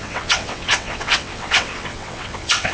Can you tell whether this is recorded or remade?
remade